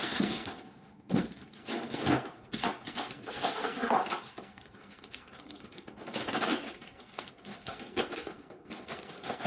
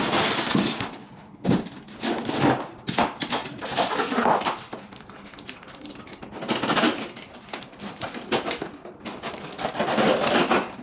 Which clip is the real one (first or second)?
second